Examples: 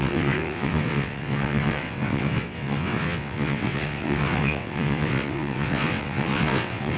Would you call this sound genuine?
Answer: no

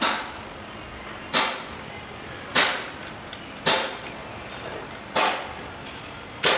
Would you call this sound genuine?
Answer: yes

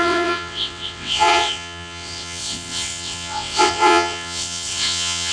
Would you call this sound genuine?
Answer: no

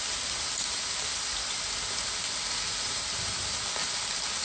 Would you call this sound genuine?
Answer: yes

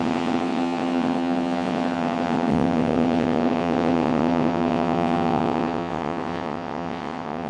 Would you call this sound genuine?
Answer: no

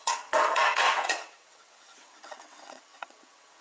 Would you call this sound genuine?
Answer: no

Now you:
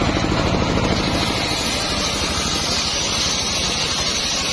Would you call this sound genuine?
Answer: yes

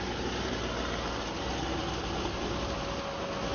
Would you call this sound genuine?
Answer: yes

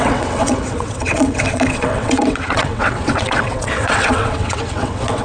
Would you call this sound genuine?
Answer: no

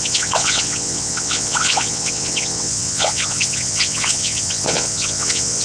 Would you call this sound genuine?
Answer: no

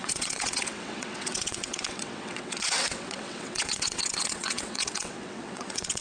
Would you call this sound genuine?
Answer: no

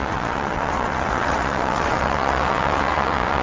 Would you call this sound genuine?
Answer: no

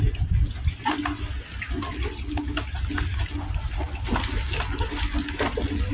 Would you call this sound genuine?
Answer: yes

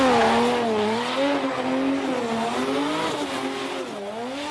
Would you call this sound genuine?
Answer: yes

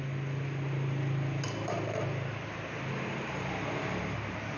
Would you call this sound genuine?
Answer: yes